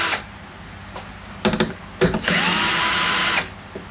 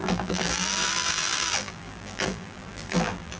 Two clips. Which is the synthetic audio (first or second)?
second